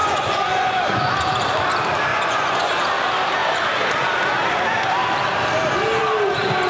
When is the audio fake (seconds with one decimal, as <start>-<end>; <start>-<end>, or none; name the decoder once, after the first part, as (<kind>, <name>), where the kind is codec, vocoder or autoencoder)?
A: 0.0-1.1 (vocoder, Vocos); 2.1-2.8